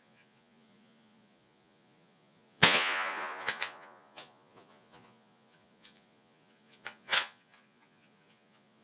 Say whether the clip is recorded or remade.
remade